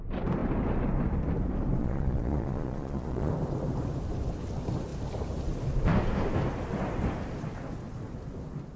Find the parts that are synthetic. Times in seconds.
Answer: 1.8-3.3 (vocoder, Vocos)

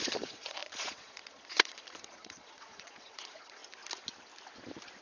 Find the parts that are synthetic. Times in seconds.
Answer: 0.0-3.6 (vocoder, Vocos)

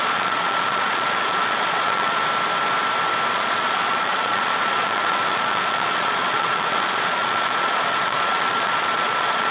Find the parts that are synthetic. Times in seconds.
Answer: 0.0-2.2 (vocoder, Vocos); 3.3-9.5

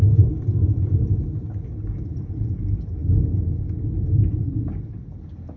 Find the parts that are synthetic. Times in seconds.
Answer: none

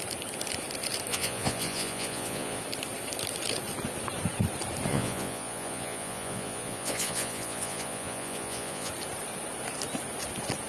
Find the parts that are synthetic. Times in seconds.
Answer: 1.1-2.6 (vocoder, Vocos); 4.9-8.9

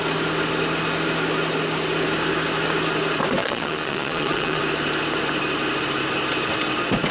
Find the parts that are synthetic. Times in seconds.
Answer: 3.4-4.6 (vocoder, Vocos)

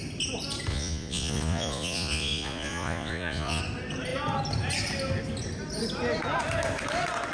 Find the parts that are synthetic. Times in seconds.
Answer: 0.7-3.6 (vocoder, Vocos)

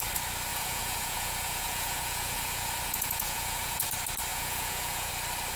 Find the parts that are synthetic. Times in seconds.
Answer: 0.5-3.9 (vocoder, Vocos); 4.3-5.1